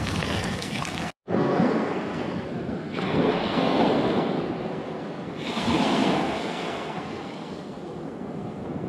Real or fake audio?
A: fake